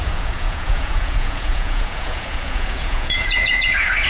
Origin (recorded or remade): remade